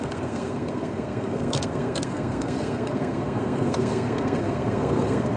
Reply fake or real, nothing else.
fake